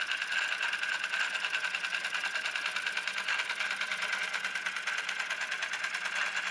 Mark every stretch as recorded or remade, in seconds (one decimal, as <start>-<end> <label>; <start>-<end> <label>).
0.0-2.2 recorded; 2.2-4.7 remade; 4.7-6.5 recorded